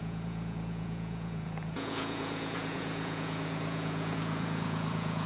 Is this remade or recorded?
remade